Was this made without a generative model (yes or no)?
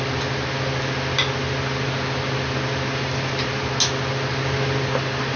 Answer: yes